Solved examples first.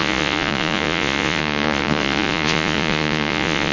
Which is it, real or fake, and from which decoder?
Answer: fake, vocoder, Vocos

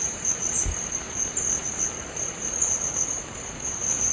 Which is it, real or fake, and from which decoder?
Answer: real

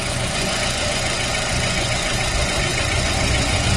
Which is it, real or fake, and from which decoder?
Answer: fake, vocoder, Vocos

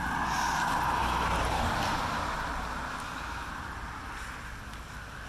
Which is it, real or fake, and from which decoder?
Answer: real